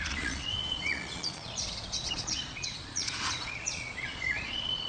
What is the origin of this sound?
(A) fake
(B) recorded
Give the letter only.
A